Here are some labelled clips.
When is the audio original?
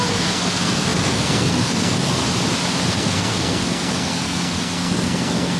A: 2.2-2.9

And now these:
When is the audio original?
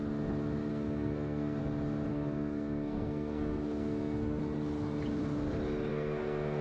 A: 0.0-0.7; 1.6-2.1; 4.4-5.9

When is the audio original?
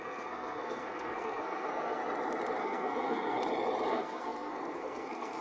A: 2.0-2.6; 3.4-3.9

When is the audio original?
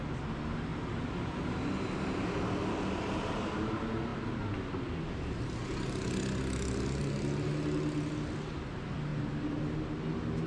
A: 0.0-10.5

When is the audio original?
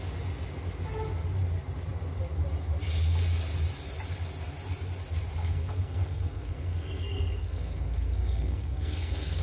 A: 0.0-5.4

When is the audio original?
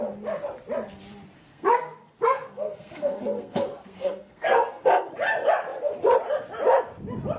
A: 0.0-1.4; 5.1-7.4